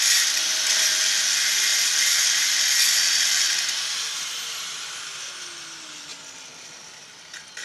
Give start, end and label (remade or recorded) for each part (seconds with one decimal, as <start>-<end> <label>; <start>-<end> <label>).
0.0-1.7 recorded; 1.7-5.3 remade; 5.3-7.6 recorded